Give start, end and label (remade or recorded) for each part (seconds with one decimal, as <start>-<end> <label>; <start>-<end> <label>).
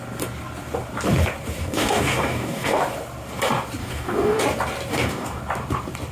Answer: 0.0-1.6 recorded; 1.6-2.8 remade; 2.8-3.8 recorded; 3.8-4.4 remade; 4.4-4.9 recorded; 4.9-5.4 remade; 5.4-6.1 recorded